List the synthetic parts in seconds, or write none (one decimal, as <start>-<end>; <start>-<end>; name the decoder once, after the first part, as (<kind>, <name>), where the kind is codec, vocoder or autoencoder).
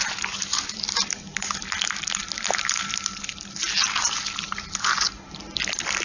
none